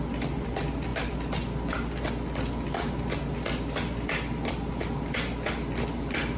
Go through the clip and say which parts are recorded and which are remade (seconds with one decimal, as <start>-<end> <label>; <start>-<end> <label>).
0.0-6.4 recorded